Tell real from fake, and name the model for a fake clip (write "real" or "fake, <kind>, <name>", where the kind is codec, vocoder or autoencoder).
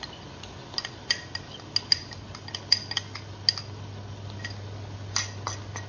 real